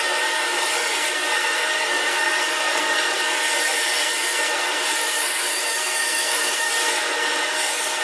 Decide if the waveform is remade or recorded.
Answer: remade